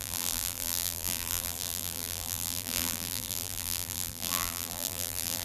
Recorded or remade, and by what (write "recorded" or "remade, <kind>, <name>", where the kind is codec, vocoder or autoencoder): remade, vocoder, BigVGAN v2